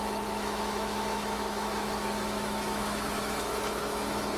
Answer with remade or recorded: remade